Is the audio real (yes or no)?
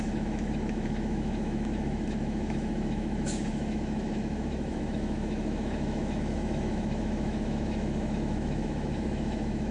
no